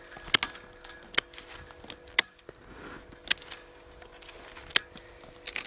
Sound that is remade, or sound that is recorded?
recorded